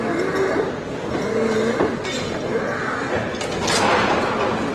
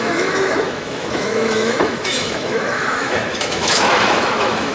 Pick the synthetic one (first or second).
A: second